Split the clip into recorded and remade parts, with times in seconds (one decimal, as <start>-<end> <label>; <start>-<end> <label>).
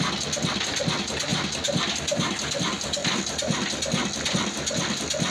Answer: 0.0-5.3 recorded